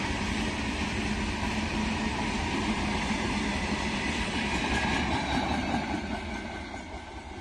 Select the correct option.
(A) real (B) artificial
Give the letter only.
A